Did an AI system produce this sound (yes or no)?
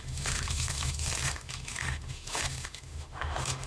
yes